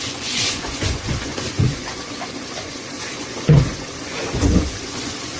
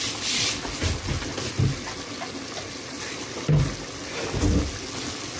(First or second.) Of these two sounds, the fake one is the first